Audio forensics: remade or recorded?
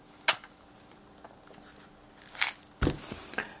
recorded